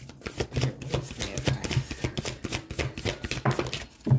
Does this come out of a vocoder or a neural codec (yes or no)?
no